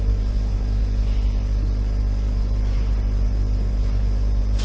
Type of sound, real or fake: fake